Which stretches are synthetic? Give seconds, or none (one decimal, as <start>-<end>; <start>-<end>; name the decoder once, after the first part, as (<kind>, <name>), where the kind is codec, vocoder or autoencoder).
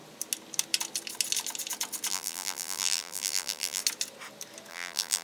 2.1-3.8 (vocoder, BigVGAN v2); 4.7-5.2